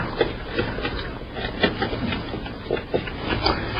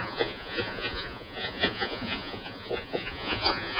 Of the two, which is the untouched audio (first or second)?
first